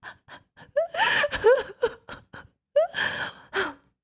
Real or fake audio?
real